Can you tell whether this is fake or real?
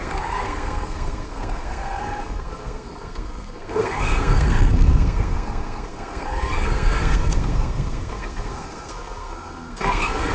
fake